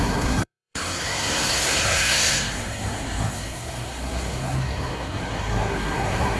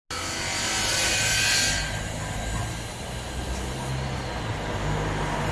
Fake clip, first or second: first